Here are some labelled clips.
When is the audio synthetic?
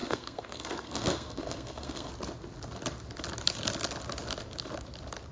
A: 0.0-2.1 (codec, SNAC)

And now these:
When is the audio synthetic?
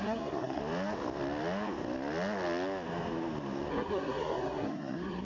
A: 0.0-0.6 (codec, SNAC); 3.7-5.2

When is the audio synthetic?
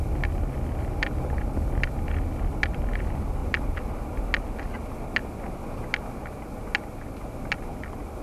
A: none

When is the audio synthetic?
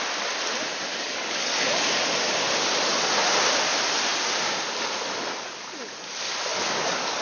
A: 0.9-2.0 (codec, DAC); 6.5-7.2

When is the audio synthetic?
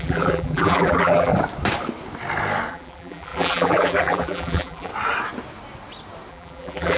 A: 0.0-1.3 (vocoder, BigVGAN v2); 2.7-4.9; 6.3-7.0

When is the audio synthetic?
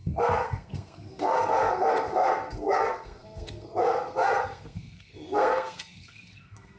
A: 0.0-6.8 (codec, SNAC)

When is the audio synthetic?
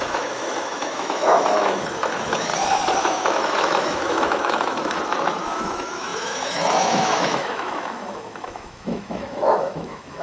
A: 0.0-2.5 (autoencoder, DAC-VAE); 3.0-10.2